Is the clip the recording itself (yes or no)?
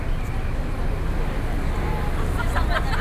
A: yes